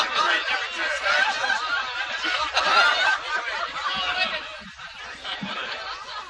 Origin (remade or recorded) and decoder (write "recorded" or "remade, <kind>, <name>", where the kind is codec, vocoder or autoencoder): recorded